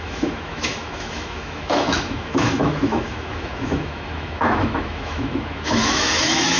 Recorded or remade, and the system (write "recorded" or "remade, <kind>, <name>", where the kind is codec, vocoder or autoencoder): remade, autoencoder, DAC-VAE